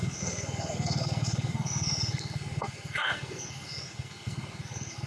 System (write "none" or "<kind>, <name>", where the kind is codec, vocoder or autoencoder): codec, SNAC